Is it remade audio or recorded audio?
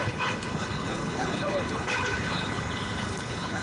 remade